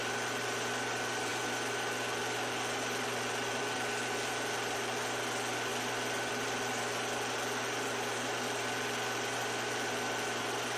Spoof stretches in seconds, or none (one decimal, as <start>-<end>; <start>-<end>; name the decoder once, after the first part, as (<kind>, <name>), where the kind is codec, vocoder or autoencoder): none